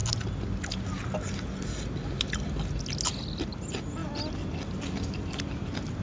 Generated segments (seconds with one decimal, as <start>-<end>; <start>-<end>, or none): none